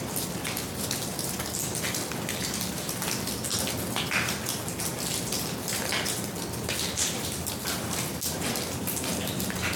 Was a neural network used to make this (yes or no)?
no